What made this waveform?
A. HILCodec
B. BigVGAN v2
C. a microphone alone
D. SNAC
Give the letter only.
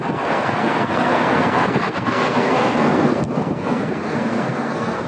D